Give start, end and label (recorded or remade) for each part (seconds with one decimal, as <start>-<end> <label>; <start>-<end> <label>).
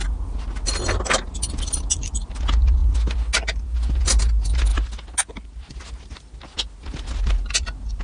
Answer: 0.0-8.0 recorded